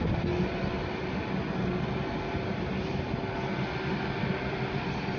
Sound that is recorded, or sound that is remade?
recorded